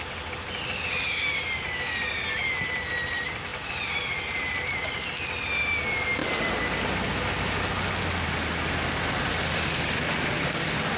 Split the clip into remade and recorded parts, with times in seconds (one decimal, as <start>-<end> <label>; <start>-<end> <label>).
0.0-11.0 recorded